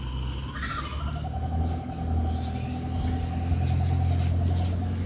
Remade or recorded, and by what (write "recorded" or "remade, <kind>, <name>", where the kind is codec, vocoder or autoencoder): recorded